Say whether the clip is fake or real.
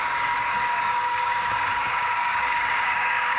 fake